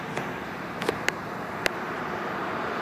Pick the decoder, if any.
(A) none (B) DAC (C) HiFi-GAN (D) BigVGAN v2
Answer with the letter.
A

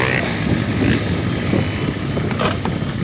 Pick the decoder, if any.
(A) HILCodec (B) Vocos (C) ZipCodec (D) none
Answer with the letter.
D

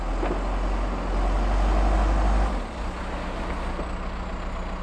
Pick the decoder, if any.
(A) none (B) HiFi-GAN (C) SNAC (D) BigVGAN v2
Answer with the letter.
A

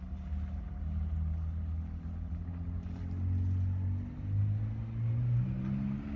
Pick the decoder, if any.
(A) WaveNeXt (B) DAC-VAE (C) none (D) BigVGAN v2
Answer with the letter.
C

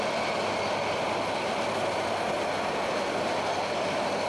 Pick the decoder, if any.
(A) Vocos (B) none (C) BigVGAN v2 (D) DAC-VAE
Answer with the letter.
B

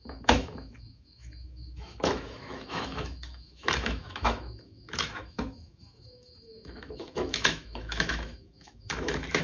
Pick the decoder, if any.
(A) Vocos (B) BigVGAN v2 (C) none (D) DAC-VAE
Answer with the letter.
D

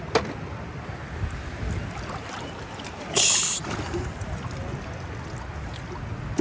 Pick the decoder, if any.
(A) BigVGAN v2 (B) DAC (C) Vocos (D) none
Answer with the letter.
D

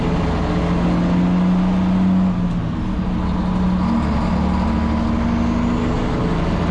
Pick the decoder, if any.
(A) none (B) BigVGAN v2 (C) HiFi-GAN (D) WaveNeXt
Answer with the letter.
A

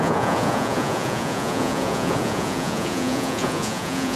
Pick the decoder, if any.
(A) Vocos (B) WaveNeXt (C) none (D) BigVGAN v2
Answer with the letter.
A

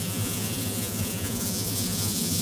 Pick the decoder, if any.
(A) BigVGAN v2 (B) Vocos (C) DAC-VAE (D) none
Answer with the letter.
B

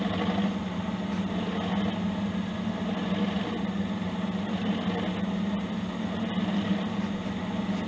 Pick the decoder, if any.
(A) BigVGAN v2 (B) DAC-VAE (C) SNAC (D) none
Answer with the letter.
D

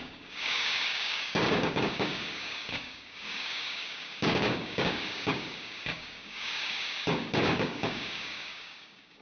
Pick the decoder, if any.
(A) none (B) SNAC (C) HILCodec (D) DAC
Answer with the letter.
D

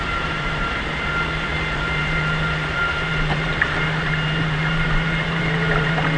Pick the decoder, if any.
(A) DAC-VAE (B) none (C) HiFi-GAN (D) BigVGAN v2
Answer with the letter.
D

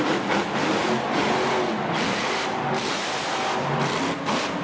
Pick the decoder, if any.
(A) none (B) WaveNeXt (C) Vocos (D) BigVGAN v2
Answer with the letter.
A